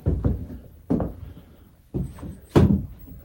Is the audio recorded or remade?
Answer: recorded